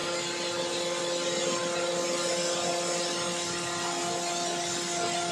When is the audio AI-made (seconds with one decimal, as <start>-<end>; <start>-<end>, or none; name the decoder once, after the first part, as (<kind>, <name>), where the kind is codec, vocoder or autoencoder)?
none